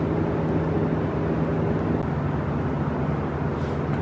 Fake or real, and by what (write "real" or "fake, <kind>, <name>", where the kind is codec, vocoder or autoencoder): fake, vocoder, BigVGAN v2